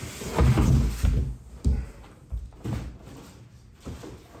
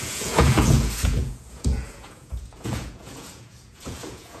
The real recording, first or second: first